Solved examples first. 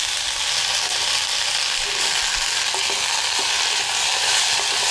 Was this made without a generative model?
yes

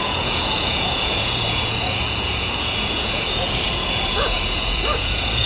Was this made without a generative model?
no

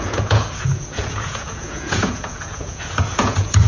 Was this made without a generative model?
no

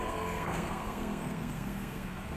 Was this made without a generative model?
no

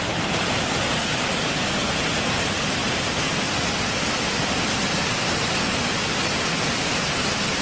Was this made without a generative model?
yes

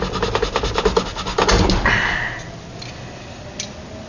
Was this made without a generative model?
yes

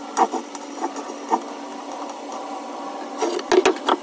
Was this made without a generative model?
yes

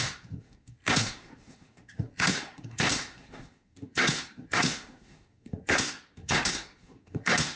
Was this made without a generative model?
no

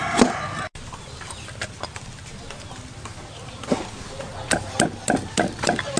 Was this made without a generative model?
yes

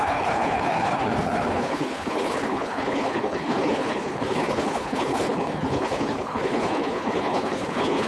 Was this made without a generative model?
no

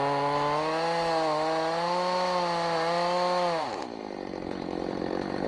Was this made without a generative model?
yes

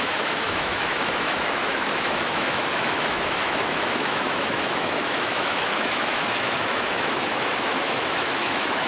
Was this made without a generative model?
no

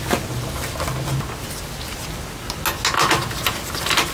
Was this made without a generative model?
yes